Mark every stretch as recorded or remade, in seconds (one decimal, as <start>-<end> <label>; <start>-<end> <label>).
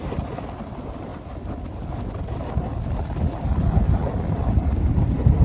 0.0-5.4 recorded